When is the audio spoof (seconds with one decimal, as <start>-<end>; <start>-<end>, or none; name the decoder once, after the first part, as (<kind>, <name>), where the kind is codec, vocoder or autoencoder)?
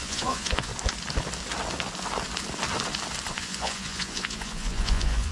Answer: 0.0-0.7 (vocoder, Vocos); 3.3-5.3